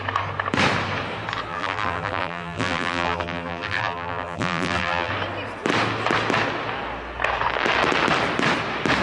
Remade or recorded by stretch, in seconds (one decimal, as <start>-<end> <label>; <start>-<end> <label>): 0.0-1.5 recorded; 1.5-5.1 remade; 5.1-9.0 recorded